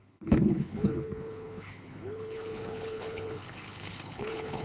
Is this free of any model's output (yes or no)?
no